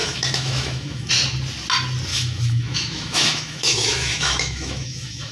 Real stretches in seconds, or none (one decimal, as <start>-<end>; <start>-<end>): 1.1-2.1